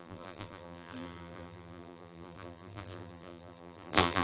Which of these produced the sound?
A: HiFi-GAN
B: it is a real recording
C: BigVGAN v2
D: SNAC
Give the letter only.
C